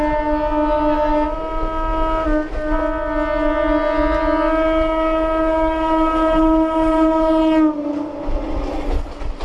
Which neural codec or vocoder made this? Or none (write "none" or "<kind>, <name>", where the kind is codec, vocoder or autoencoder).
none